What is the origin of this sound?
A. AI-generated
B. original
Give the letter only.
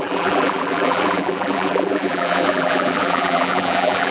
A